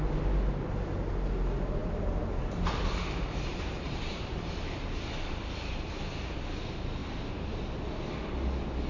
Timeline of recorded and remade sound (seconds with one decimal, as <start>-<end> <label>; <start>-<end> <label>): 0.0-1.8 recorded; 1.8-2.8 remade; 2.8-3.5 recorded; 3.5-5.4 remade; 5.4-7.0 recorded; 7.0-7.6 remade; 7.6-8.9 recorded